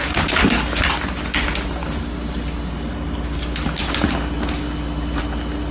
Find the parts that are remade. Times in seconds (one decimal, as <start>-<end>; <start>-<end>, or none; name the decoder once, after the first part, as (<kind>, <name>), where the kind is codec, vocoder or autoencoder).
none

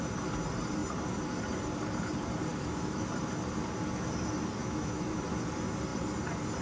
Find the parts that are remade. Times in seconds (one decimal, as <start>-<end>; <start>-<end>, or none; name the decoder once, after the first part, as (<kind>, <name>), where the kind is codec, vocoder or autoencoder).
2.5-3.1 (autoencoder, DAC-VAE); 4.6-5.2

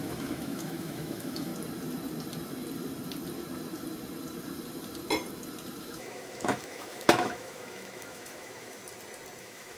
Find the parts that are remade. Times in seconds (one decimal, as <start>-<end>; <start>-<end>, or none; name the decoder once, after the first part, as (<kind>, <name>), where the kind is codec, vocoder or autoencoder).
0.0-1.5 (autoencoder, DAC-VAE); 5.8-8.8; 9.4-9.8

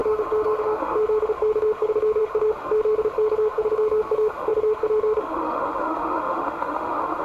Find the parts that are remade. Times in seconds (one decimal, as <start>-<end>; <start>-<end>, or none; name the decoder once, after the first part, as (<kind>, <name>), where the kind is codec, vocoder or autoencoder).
0.0-7.2 (autoencoder, DAC-VAE)

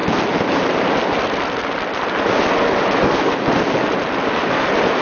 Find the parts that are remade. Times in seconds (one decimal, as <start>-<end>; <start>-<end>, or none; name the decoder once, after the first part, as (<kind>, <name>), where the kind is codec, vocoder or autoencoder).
none